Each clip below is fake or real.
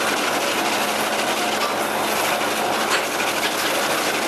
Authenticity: real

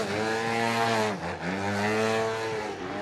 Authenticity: real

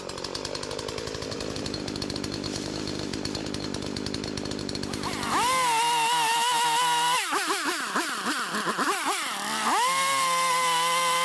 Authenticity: real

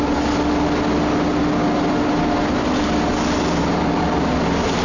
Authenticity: real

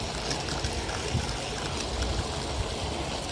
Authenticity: real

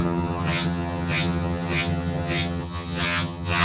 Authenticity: fake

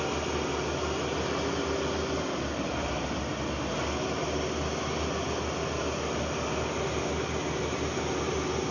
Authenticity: real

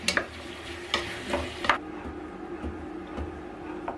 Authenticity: real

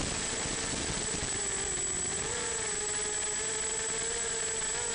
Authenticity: real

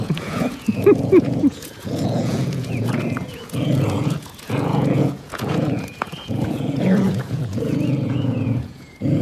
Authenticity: fake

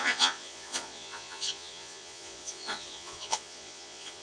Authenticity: fake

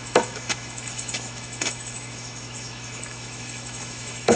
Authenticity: fake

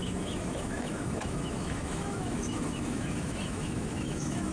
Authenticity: fake